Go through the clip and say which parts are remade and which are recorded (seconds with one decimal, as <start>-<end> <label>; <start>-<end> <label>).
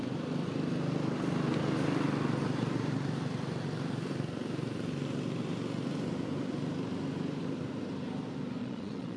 0.0-8.6 recorded; 8.6-9.2 remade